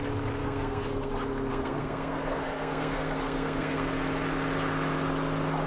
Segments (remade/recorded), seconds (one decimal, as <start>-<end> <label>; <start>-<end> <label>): 0.0-0.4 recorded; 0.4-1.1 remade; 1.1-1.5 recorded; 1.5-3.9 remade; 3.9-5.7 recorded